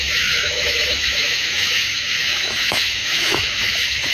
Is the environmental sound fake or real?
fake